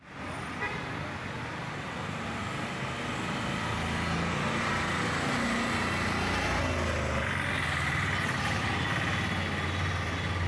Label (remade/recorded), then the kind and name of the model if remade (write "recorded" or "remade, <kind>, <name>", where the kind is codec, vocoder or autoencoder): recorded